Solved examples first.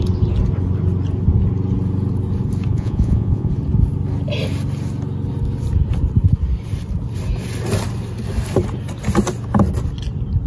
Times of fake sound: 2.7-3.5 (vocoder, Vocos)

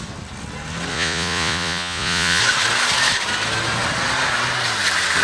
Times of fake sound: 0.9-2.4 (vocoder, Vocos)